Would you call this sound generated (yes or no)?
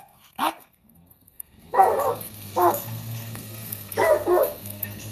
yes